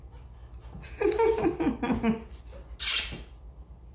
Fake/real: real